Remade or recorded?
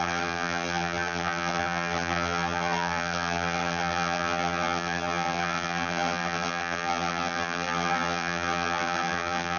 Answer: remade